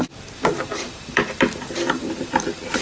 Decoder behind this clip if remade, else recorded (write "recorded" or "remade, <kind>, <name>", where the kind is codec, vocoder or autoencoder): remade, vocoder, BigVGAN v2